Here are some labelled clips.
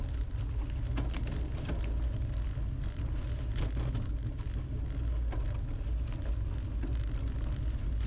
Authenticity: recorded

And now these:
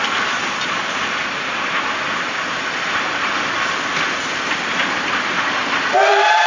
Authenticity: remade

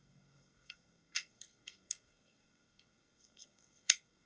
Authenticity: remade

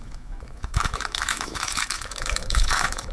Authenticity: remade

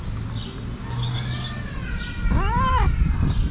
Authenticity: recorded